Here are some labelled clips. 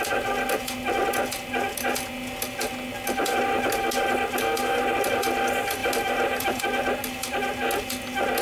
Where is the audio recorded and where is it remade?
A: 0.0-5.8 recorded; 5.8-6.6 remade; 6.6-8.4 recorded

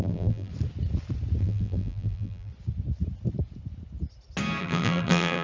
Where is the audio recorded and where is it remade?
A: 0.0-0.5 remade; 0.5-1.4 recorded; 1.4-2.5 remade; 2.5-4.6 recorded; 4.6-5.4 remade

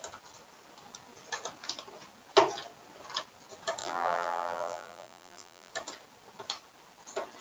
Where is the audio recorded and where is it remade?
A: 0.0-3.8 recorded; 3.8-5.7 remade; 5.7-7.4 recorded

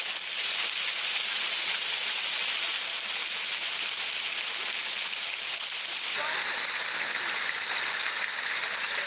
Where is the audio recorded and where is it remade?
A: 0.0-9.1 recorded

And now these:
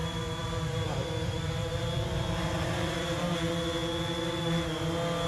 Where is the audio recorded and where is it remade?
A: 0.0-3.2 remade; 3.2-5.3 recorded

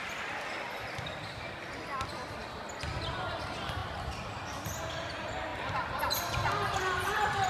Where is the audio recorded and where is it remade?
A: 0.0-5.5 recorded; 5.5-6.0 remade; 6.0-7.5 recorded